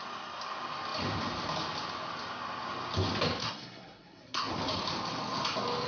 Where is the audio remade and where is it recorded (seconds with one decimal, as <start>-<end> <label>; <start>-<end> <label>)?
0.0-3.4 recorded; 3.4-4.5 remade; 4.5-5.9 recorded